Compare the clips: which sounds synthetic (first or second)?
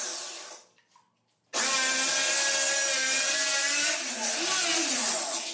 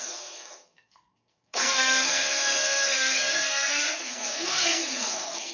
second